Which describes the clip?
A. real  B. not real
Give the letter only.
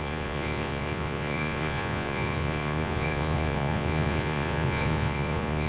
B